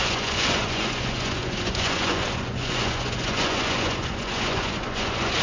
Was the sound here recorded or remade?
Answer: remade